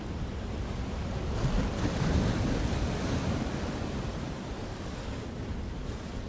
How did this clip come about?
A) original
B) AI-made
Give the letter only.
A